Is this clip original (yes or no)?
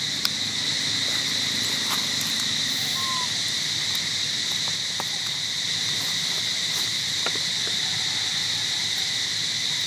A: yes